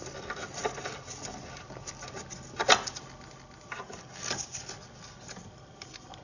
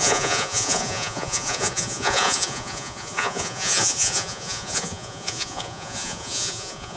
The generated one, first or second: second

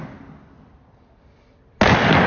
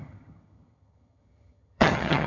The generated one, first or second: second